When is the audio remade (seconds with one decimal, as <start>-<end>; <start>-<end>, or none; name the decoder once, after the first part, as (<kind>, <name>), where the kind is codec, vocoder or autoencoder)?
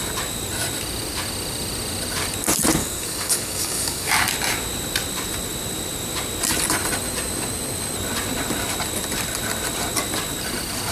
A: 2.8-4.1 (codec, DAC)